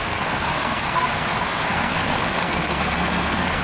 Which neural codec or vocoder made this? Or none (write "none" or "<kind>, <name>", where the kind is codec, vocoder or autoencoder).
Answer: codec, SNAC